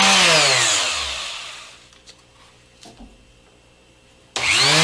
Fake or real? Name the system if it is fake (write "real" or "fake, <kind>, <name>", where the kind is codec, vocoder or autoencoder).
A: real